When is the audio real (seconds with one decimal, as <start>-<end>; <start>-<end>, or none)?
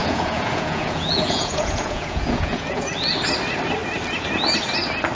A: 2.9-5.1